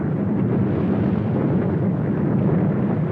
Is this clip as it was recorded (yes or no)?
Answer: yes